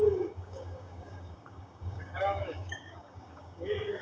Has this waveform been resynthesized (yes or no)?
yes